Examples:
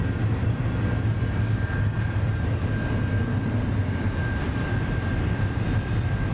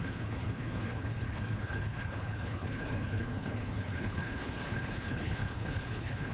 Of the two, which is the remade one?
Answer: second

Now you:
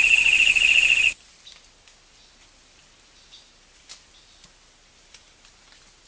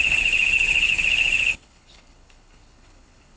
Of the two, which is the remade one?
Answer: second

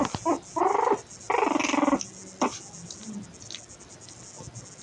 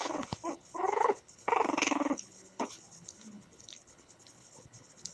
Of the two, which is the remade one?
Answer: second